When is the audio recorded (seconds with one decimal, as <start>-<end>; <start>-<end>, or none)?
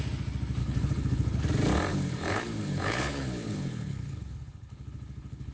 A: 0.0-0.6; 1.4-1.9